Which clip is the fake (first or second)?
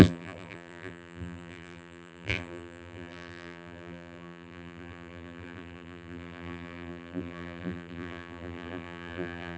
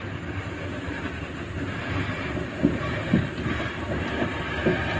first